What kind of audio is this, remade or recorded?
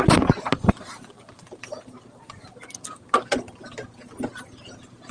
recorded